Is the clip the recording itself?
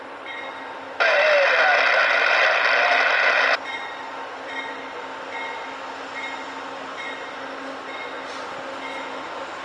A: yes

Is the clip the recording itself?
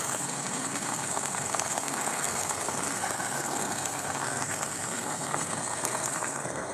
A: no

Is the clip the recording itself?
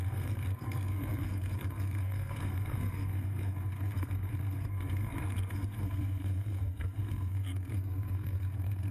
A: no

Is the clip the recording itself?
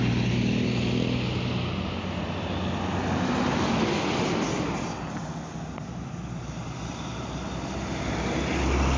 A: yes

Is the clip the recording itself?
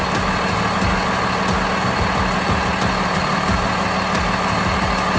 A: yes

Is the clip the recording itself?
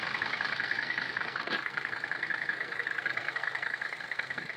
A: no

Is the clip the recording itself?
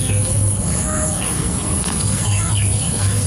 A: no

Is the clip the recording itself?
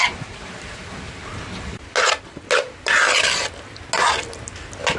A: yes